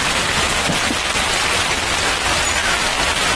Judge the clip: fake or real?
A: real